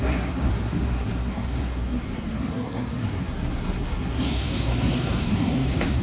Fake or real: fake